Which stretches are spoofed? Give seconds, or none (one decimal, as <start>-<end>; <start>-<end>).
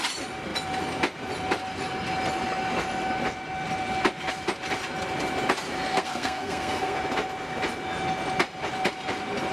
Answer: 5.9-7.0